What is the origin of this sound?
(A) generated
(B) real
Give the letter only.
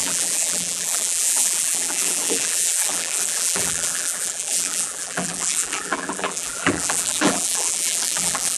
A